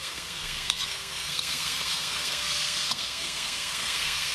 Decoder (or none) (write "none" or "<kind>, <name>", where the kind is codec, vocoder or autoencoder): codec, SNAC